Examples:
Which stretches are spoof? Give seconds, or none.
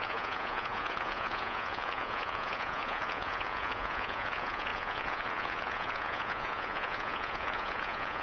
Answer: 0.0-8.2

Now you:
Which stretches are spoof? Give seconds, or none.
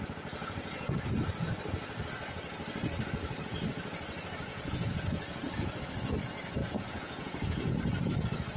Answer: 0.4-1.0; 4.5-5.8; 6.6-7.7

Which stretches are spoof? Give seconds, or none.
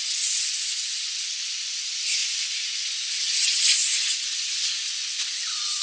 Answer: 0.0-2.2; 3.2-5.8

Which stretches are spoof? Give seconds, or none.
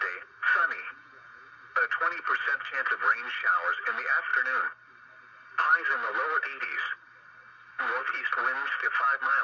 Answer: 0.4-1.5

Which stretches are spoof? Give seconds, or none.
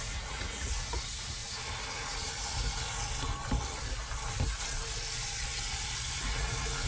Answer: 0.0-1.4; 1.9-2.3; 6.2-6.9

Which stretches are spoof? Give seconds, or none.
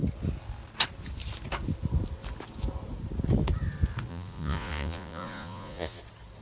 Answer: 4.1-6.0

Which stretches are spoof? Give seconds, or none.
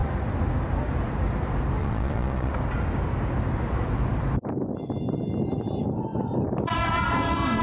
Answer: 1.8-2.5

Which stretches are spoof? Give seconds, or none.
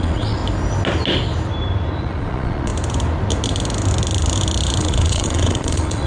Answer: 0.0-0.4; 2.0-2.7; 4.8-6.1